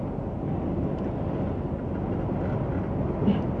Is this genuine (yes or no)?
yes